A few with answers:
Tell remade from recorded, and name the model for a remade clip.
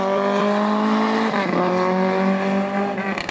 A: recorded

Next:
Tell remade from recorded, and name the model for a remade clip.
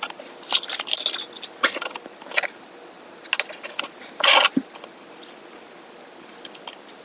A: recorded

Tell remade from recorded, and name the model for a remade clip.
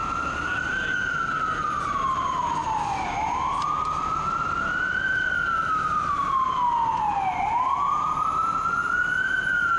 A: recorded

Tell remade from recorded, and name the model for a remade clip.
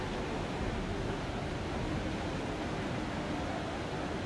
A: recorded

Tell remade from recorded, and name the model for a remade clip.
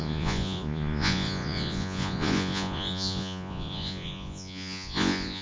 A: remade, vocoder, Vocos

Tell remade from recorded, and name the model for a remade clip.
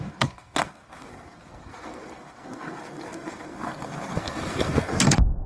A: remade, codec, SNAC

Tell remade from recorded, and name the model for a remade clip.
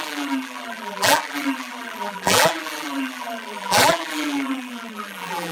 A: remade, vocoder, BigVGAN v2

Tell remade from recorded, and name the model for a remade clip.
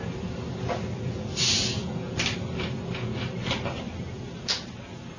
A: recorded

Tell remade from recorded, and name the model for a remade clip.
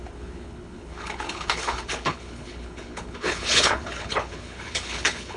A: remade, codec, HILCodec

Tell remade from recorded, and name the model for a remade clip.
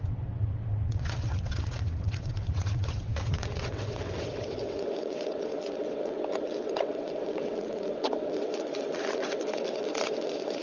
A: remade, vocoder, WaveNeXt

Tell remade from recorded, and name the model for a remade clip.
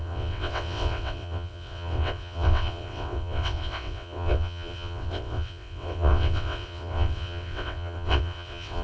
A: remade, vocoder, WaveNeXt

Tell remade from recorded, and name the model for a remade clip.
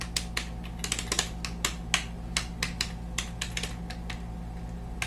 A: recorded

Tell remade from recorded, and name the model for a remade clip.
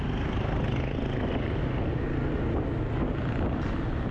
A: recorded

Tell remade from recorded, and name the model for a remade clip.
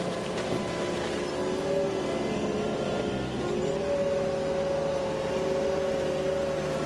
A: recorded